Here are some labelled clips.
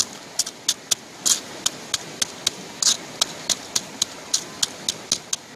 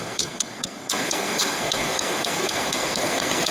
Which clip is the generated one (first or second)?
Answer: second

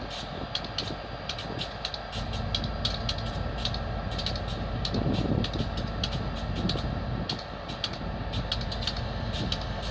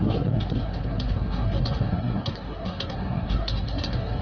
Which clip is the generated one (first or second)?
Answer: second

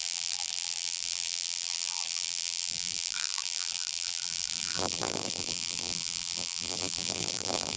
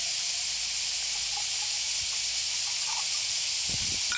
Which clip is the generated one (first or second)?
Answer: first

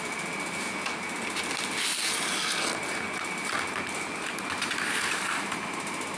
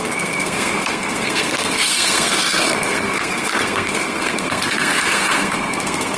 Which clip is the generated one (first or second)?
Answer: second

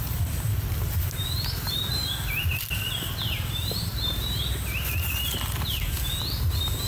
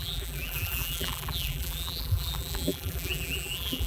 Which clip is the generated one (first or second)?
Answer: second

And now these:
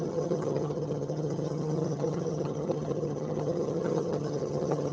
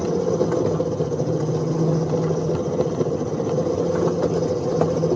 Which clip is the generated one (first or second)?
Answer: first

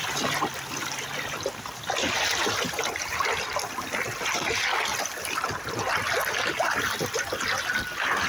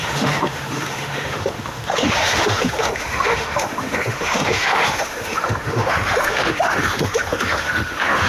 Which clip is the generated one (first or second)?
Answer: second